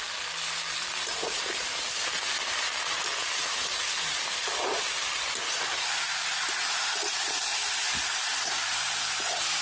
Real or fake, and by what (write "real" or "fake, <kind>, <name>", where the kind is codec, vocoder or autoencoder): real